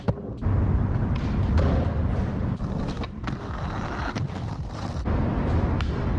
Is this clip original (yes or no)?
yes